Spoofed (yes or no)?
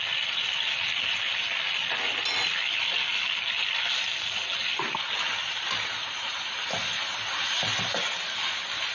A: no